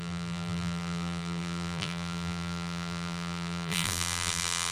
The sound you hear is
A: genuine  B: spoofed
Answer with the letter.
B